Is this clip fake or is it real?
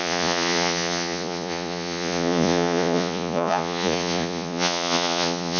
fake